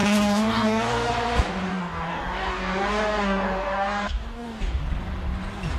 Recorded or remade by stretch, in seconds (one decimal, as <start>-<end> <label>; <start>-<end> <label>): 0.0-1.1 remade; 1.1-1.7 recorded; 1.7-4.8 remade; 4.8-5.8 recorded